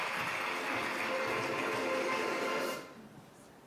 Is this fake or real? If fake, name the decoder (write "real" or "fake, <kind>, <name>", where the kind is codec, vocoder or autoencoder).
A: real